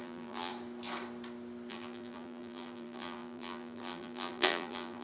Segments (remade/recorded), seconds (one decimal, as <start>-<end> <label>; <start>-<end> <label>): 0.0-0.5 remade; 0.5-1.7 recorded; 1.7-5.0 remade